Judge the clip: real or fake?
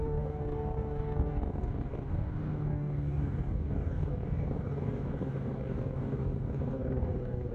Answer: fake